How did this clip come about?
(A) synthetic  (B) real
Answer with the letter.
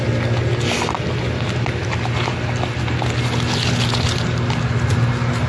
B